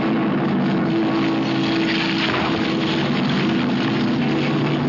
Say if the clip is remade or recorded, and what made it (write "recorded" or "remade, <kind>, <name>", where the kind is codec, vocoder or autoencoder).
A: recorded